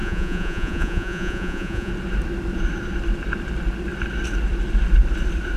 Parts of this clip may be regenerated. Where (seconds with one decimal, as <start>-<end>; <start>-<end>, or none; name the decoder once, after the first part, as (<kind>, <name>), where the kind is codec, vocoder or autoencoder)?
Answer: 0.0-1.9 (vocoder, Vocos)